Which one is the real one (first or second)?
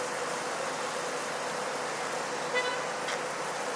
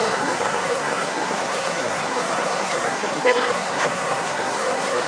first